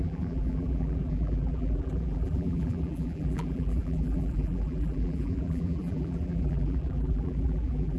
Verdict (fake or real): fake